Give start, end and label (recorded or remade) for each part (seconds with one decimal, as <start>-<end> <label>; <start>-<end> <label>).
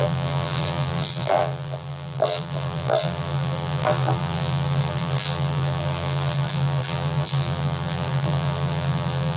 0.0-9.4 remade